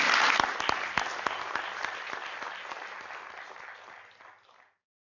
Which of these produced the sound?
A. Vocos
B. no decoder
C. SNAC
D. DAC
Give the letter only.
B